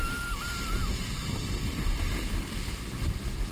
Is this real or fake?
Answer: fake